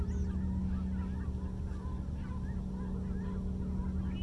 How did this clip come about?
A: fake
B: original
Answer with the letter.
B